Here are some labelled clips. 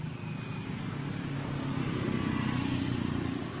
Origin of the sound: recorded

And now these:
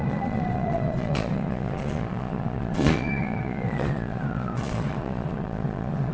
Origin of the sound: remade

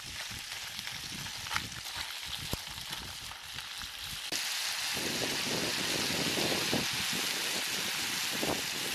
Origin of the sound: recorded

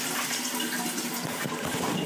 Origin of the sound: recorded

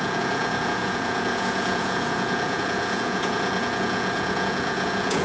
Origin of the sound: remade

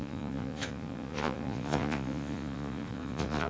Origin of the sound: remade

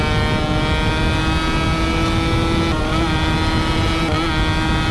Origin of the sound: recorded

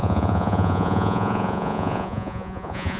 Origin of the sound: remade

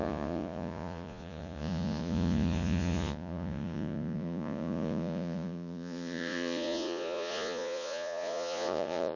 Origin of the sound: remade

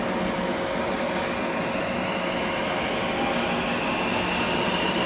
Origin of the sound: recorded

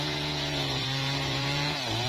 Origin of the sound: remade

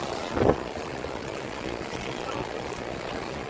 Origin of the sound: remade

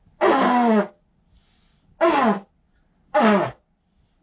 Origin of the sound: recorded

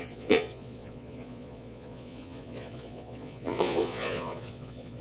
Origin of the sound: remade